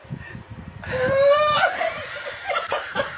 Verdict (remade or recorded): remade